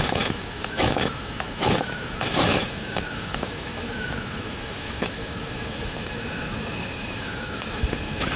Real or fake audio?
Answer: fake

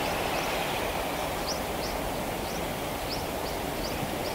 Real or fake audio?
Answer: real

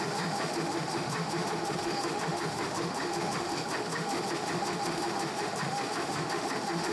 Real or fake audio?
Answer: fake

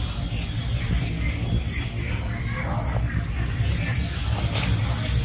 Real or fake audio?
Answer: real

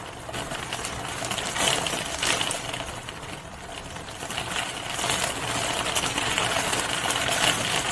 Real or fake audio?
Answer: real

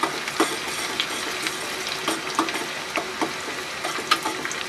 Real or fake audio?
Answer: real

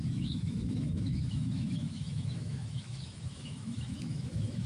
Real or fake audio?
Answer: fake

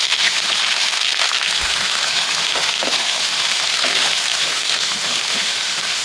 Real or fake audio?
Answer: fake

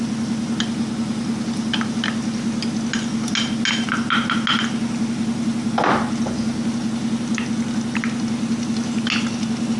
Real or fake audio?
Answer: real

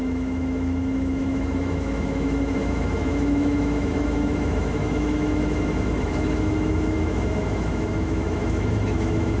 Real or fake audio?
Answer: fake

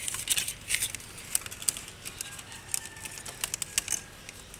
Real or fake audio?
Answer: real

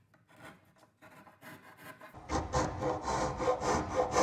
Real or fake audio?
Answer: real